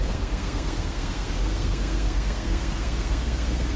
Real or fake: fake